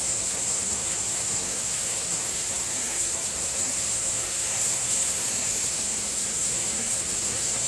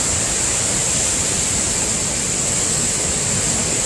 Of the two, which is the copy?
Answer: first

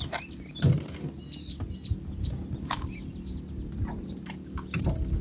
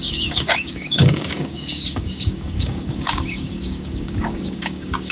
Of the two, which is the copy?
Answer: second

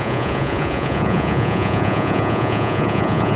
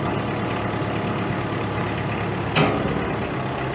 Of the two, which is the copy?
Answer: first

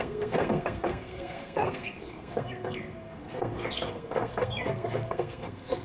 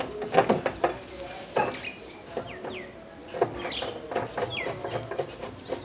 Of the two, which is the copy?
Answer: first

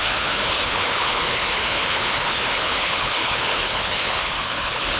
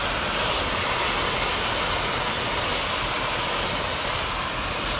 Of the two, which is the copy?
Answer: first